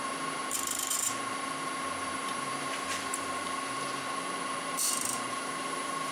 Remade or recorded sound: remade